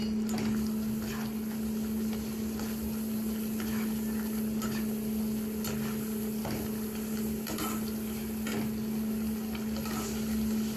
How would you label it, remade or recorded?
recorded